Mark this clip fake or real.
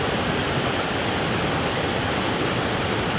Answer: real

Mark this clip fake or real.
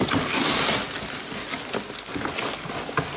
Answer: real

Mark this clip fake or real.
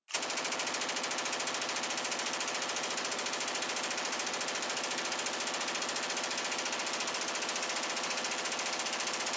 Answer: real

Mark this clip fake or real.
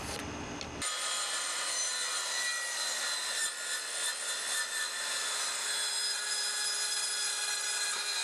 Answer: real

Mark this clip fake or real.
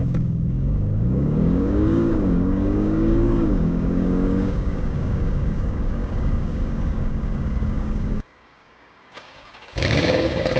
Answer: fake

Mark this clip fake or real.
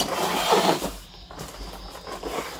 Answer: real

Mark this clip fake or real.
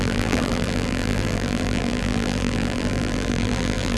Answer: fake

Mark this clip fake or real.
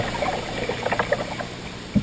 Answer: real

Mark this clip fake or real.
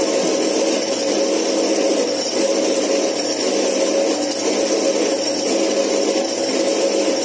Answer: real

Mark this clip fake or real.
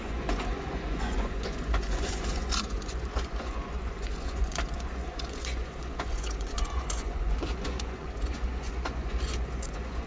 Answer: fake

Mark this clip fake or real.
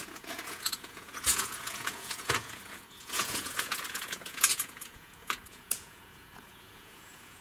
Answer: fake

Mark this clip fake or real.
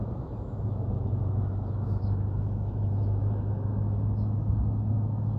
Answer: fake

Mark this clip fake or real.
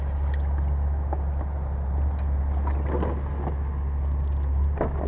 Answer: real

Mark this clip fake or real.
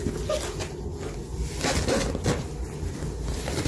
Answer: real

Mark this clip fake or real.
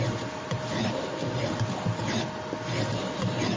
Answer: real